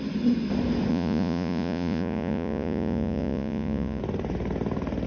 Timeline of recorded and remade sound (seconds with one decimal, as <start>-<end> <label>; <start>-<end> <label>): 0.0-0.9 recorded; 0.9-4.0 remade; 4.0-5.1 recorded